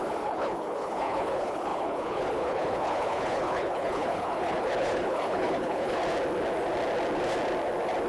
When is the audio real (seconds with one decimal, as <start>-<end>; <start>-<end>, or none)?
6.0-8.1

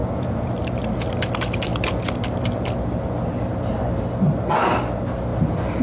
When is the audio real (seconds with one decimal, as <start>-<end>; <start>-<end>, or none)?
0.5-5.8